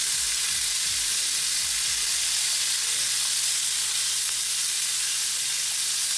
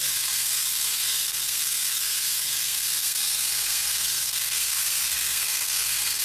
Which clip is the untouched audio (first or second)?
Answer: first